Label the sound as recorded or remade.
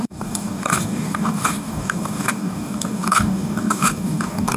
remade